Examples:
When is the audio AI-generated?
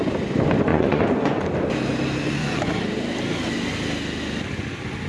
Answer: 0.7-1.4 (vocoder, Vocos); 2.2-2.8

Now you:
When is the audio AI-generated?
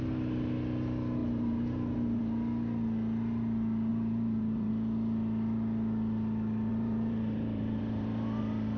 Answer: 1.2-2.2 (vocoder, BigVGAN v2); 3.9-4.7; 6.7-8.4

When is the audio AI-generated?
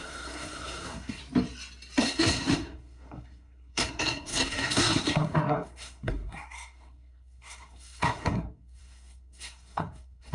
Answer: 0.0-1.2 (codec, SNAC); 2.0-10.3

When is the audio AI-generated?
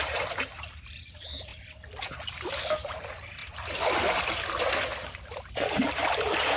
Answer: 0.0-1.5 (vocoder, BigVGAN v2); 2.3-3.4; 5.5-6.6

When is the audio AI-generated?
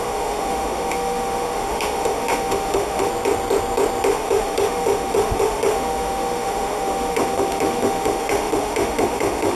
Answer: 0.0-3.1 (autoencoder, DAC-VAE); 4.1-9.6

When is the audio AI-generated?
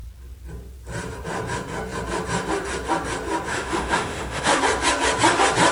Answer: 3.5-4.6 (autoencoder, DAC-VAE)